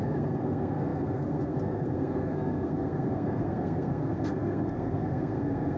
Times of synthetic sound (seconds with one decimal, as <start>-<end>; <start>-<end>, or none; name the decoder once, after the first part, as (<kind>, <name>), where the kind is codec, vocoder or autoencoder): 0.0-5.8 (codec, SNAC)